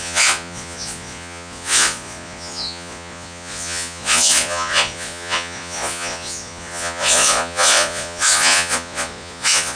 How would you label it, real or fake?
fake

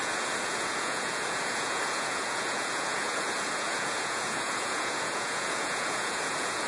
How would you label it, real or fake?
fake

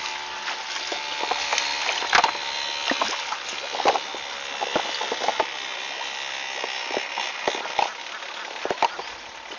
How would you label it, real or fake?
real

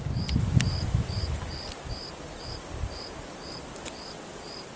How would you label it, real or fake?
real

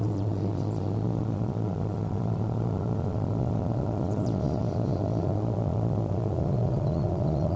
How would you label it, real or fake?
fake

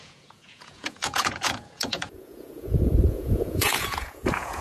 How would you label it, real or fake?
fake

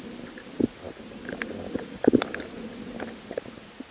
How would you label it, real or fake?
real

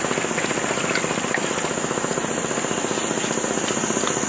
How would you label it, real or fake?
real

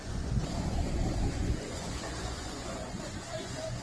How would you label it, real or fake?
fake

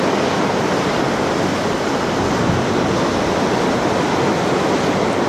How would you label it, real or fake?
real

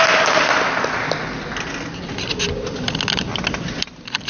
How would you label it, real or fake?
real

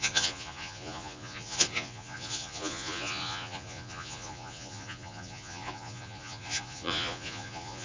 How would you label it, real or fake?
fake